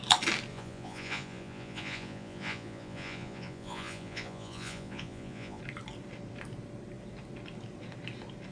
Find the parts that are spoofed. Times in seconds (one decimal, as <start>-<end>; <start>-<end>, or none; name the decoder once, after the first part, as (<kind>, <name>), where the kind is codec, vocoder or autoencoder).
0.5-5.6 (vocoder, Vocos)